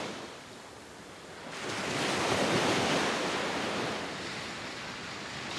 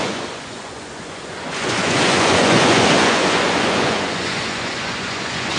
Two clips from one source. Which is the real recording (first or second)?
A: first